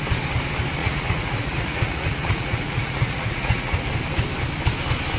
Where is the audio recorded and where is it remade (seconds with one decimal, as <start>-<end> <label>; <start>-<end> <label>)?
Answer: 0.0-0.8 recorded; 0.8-3.9 remade; 3.9-5.2 recorded